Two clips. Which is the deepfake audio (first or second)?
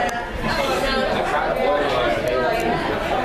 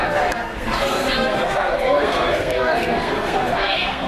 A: second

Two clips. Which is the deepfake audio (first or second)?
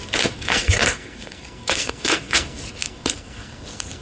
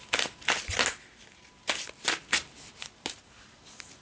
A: first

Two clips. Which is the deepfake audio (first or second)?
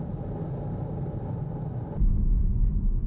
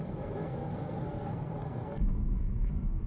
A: second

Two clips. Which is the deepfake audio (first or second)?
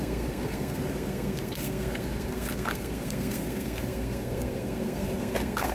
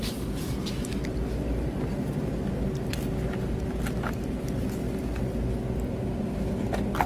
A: first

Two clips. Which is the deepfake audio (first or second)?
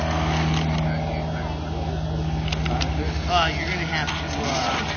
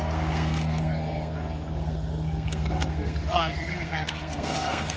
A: second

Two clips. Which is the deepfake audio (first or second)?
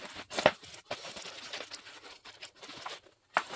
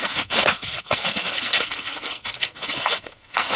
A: second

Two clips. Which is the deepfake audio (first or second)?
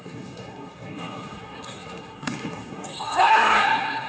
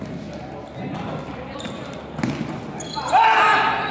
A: first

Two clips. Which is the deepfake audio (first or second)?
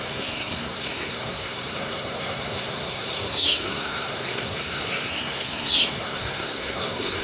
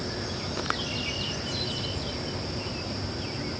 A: first